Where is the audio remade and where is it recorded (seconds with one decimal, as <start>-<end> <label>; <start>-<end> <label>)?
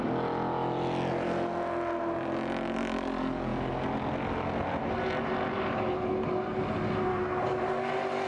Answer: 0.0-7.1 recorded; 7.1-7.9 remade; 7.9-8.3 recorded